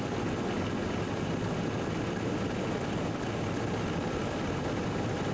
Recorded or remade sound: recorded